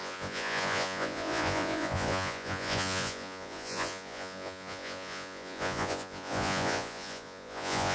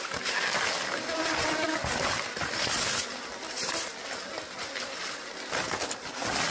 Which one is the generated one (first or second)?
first